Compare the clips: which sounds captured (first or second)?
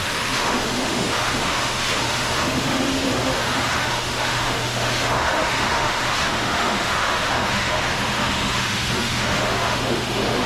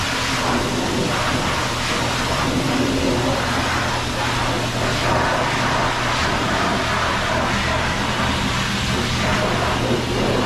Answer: second